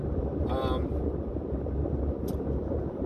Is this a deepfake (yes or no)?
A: no